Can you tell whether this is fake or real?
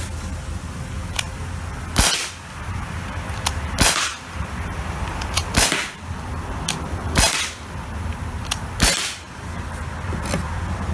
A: real